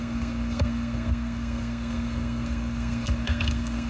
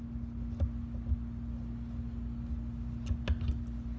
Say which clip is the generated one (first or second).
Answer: first